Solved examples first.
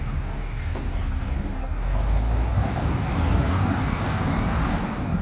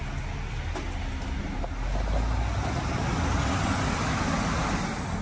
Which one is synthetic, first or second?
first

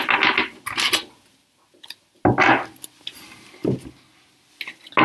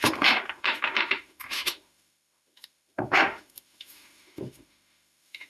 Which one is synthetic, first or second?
second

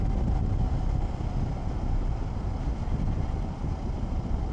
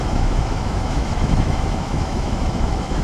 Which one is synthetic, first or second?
second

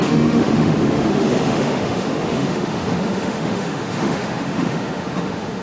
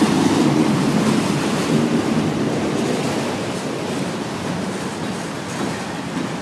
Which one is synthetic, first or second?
first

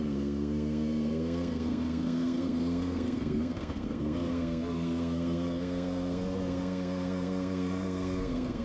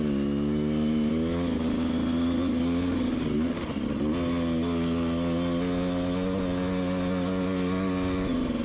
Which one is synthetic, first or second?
first